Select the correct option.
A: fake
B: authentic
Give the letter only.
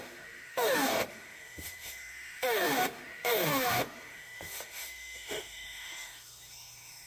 A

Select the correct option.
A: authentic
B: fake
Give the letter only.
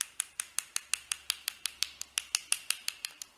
A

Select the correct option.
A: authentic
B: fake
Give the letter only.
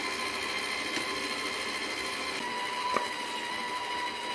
A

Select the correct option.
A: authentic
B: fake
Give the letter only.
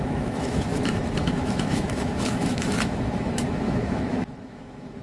B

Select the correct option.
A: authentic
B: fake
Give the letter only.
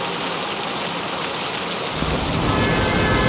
A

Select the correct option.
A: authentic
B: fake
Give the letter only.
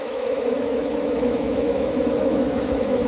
B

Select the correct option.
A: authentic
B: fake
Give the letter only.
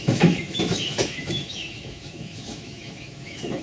B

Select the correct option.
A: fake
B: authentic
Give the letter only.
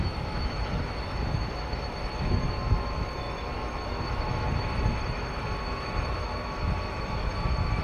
A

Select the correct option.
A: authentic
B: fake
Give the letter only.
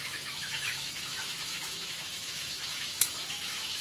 B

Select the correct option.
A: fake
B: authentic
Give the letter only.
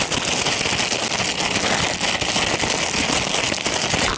B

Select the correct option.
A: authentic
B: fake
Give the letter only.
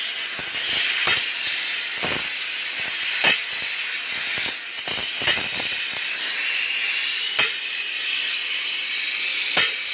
A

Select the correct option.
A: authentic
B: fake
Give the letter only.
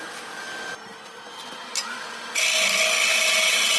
A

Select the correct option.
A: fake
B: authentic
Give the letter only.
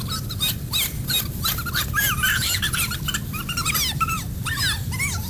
B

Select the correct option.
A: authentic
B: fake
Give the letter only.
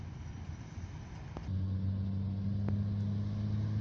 A